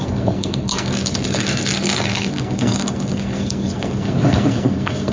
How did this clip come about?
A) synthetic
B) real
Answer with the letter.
A